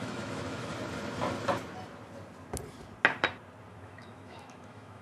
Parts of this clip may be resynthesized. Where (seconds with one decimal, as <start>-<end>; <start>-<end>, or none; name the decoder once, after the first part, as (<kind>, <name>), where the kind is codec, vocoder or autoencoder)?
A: 0.0-0.7 (autoencoder, DAC-VAE); 3.7-5.0